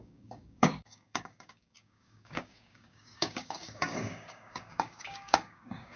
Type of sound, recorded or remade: remade